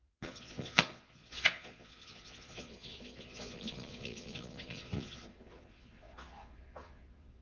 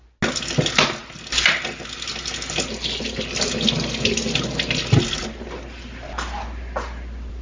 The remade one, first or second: first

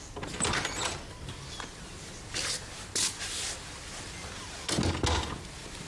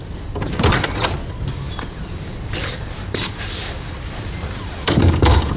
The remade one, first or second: second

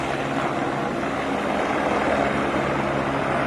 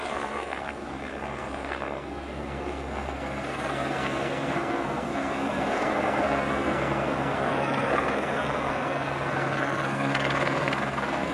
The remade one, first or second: second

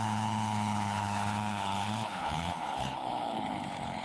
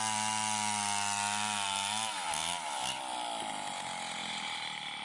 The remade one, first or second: first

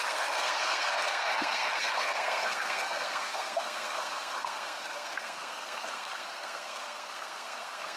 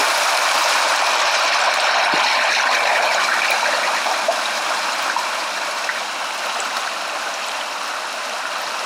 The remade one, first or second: first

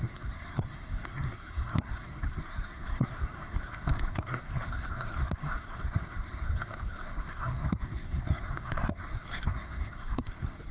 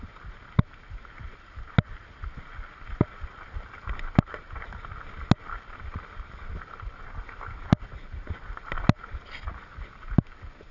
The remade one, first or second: first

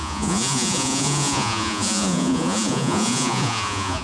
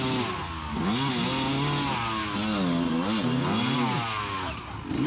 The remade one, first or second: first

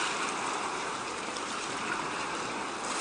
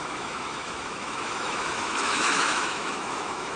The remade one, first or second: second